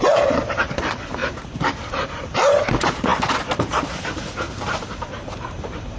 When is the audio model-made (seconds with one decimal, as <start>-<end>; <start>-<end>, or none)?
0.0-3.1; 4.0-6.0